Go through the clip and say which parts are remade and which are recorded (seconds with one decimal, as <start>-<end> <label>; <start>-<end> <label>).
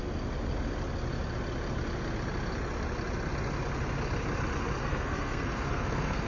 0.0-4.8 recorded; 4.8-6.3 remade